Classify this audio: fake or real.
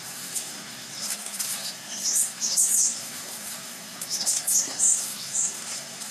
fake